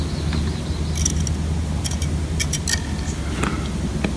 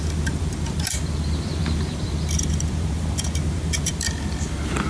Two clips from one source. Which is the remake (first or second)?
second